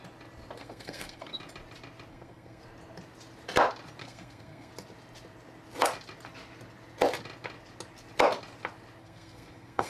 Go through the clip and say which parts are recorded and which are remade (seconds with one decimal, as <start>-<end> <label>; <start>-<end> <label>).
0.0-0.6 recorded; 0.6-1.4 remade; 1.4-2.1 recorded; 2.1-2.6 remade; 2.6-4.0 recorded; 4.0-4.7 remade; 4.7-9.0 recorded; 9.0-9.9 remade